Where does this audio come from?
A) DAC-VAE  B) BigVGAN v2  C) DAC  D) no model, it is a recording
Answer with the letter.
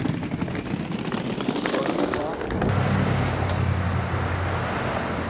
D